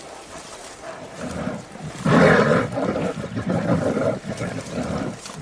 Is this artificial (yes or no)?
yes